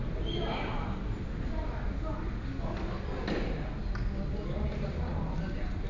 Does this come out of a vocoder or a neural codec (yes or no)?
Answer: no